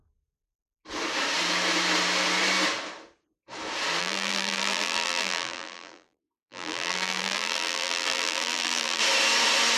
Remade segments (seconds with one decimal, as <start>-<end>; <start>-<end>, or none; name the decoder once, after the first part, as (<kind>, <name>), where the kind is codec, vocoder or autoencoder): 4.0-9.0 (vocoder, BigVGAN v2)